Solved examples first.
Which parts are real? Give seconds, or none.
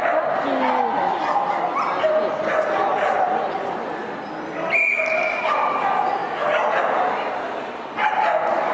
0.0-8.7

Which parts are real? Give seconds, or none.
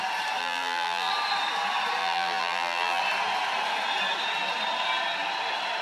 0.0-0.4; 1.1-2.0; 3.0-5.8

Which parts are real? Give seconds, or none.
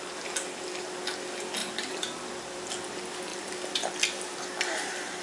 0.0-1.6; 2.7-3.3; 3.9-5.2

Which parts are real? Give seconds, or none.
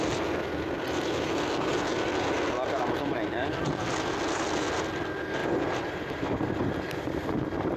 0.0-5.4; 6.7-7.8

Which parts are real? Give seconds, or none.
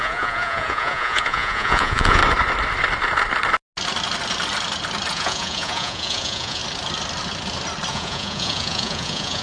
2.2-5.1; 6.6-7.9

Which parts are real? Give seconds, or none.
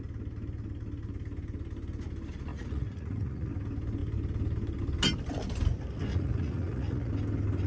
0.0-2.5; 3.5-6.1; 7.1-7.7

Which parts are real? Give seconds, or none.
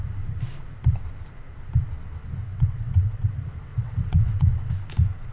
0.0-2.4; 3.3-3.7; 4.7-5.3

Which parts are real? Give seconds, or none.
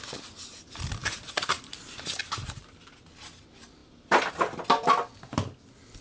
0.0-6.0